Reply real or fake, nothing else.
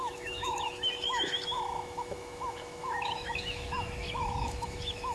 fake